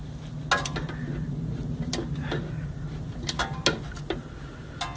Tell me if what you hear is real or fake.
real